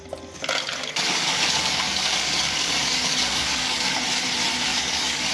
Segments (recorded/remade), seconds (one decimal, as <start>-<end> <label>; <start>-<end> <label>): 0.0-0.8 recorded; 0.8-4.0 remade; 4.0-4.7 recorded; 4.7-5.3 remade